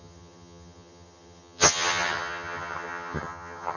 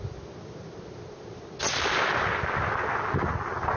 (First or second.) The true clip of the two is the second